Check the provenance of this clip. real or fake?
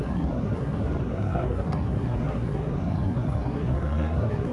fake